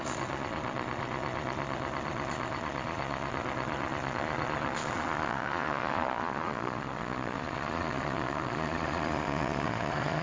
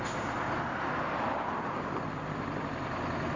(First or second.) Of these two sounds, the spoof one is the first